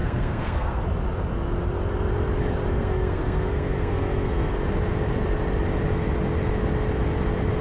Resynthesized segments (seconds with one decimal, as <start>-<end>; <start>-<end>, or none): 0.0-0.8; 2.7-4.5